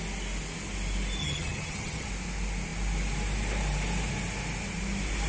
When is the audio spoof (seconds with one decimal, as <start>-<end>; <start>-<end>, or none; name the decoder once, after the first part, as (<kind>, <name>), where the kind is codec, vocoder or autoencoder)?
1.2-2.1 (vocoder, HiFi-GAN)